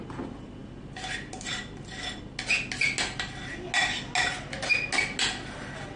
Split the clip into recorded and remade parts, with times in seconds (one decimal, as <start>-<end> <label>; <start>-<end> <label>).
0.0-6.0 recorded